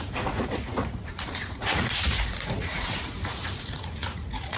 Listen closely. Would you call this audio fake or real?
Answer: fake